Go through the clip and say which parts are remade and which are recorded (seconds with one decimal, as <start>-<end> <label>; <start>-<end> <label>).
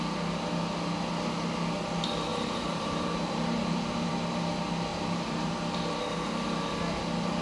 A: 0.0-2.3 recorded; 2.3-4.1 remade; 4.1-4.9 recorded; 4.9-5.5 remade; 5.5-7.4 recorded